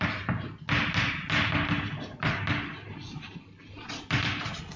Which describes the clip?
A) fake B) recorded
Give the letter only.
B